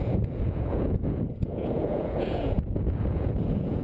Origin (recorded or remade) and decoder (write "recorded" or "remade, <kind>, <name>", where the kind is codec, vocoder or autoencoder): remade, vocoder, Vocos